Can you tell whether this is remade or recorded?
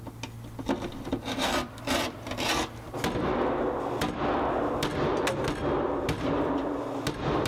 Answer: recorded